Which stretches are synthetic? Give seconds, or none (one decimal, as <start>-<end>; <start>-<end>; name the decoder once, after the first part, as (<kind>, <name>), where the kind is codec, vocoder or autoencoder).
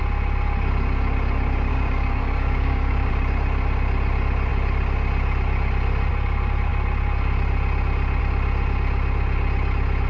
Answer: 1.7-3.1 (codec, DAC)